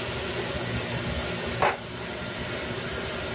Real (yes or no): yes